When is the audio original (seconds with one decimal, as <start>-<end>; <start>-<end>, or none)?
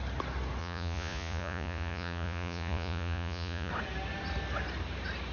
0.0-0.6; 3.7-5.3